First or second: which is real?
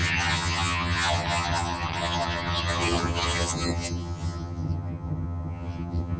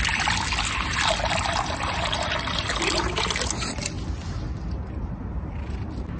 second